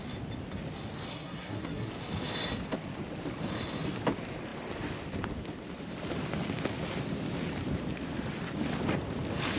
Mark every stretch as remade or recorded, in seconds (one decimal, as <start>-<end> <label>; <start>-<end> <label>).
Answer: 0.0-1.1 recorded; 1.1-1.9 remade; 1.9-9.6 recorded